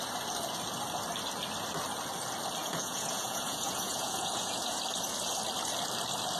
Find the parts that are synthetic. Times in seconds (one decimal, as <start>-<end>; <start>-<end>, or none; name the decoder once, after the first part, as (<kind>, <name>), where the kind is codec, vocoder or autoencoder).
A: 2.6-4.8 (vocoder, Vocos)